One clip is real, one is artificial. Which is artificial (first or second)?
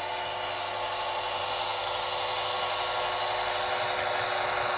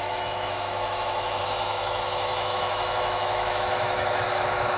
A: second